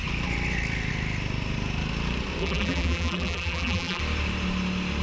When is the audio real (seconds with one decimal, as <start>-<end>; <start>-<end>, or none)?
0.0-2.4; 4.0-5.0